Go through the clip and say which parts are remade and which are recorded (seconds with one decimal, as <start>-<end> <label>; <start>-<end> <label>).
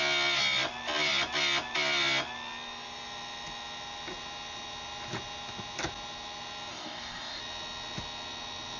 0.0-6.7 recorded; 6.7-7.4 remade; 7.4-8.8 recorded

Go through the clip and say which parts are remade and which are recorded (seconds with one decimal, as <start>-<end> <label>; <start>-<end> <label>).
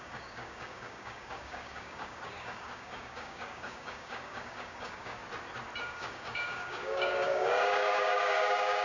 0.0-5.2 remade; 5.2-5.8 recorded; 5.8-8.8 remade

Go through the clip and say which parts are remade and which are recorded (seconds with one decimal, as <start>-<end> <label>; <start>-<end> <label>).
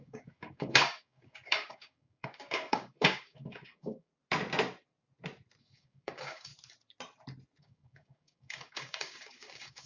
0.0-4.1 remade; 4.1-5.6 recorded; 5.6-6.5 remade; 6.5-7.6 recorded; 7.6-9.9 remade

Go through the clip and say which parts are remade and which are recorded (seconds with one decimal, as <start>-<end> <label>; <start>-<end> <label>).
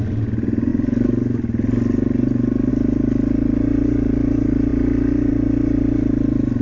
0.0-6.6 recorded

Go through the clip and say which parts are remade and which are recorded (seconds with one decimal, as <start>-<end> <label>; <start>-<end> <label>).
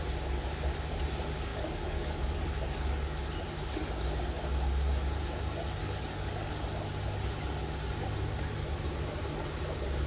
0.0-1.5 recorded; 1.5-3.2 remade; 3.2-5.8 recorded; 5.8-6.5 remade; 6.5-10.1 recorded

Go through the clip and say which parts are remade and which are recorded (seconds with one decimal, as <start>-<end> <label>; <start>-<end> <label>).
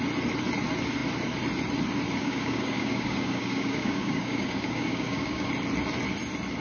0.0-2.2 recorded; 2.2-5.5 remade; 5.5-6.6 recorded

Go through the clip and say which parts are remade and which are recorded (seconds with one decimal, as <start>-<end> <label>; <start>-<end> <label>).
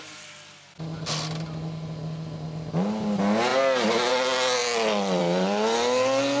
0.0-6.4 recorded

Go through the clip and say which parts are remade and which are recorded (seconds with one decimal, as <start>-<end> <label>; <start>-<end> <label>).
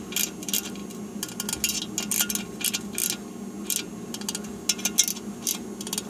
0.0-6.1 recorded